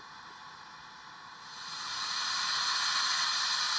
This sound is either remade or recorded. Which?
recorded